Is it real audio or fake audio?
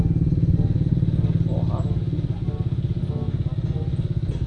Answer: real